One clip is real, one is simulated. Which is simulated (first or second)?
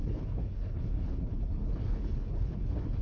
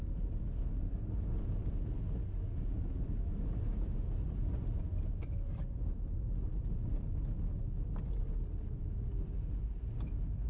first